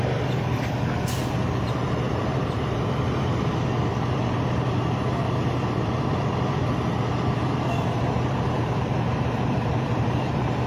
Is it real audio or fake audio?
fake